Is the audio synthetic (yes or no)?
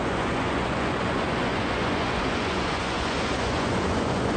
yes